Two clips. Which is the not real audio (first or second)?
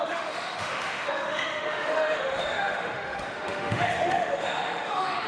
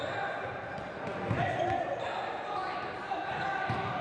first